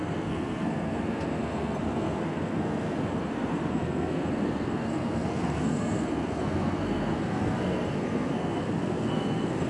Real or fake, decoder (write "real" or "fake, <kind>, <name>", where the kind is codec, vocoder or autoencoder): fake, codec, SNAC